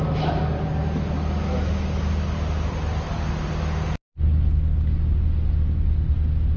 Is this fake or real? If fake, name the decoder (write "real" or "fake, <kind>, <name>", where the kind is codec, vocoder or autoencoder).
real